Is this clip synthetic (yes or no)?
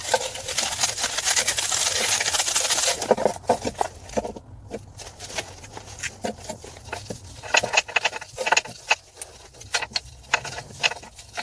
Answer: no